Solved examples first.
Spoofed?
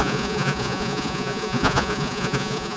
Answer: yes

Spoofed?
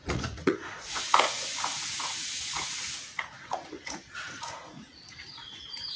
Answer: yes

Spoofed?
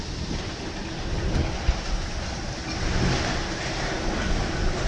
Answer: no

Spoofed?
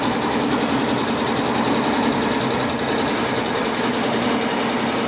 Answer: no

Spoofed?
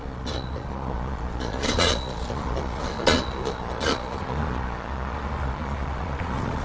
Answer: yes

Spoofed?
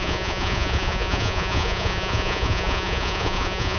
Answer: yes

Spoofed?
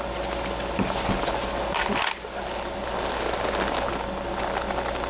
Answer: no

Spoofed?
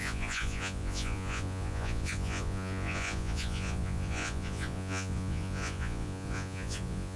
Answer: yes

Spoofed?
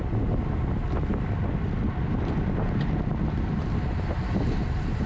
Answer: no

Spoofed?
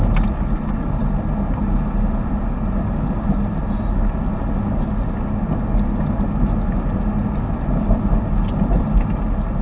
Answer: no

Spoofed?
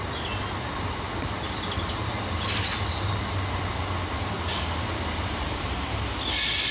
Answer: no